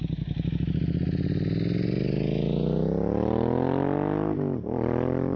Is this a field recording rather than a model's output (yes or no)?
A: yes